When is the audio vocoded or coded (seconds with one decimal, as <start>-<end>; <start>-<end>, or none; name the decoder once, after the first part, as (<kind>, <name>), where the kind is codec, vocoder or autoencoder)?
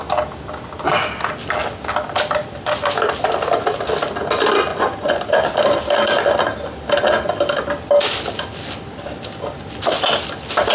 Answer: 4.7-5.2 (vocoder, Vocos)